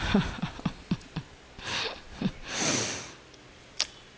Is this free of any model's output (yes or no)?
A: yes